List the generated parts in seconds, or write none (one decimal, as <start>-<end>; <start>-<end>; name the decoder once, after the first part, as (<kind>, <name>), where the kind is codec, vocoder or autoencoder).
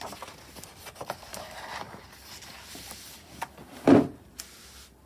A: 1.3-4.4 (vocoder, BigVGAN v2)